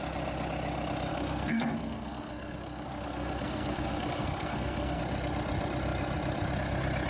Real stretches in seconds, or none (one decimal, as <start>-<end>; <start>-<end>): 0.0-1.1; 5.0-7.1